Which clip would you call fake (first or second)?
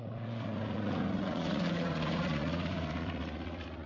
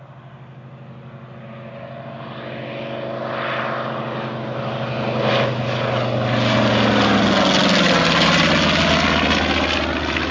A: first